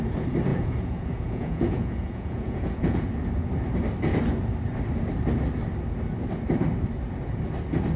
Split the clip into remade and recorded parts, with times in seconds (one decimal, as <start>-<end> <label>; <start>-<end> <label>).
0.0-0.5 recorded; 0.5-3.1 remade; 3.1-8.0 recorded